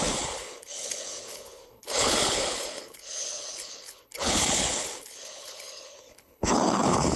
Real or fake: fake